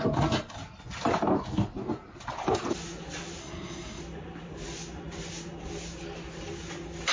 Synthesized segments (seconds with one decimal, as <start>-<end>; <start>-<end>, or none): 3.4-4.0